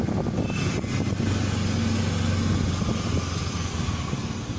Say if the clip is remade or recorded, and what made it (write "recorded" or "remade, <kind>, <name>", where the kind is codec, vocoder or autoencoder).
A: recorded